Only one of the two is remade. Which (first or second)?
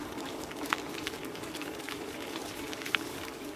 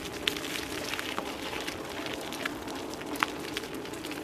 first